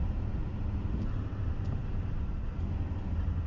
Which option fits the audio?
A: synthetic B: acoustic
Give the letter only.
B